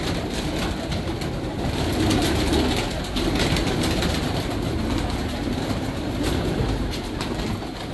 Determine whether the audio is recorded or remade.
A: recorded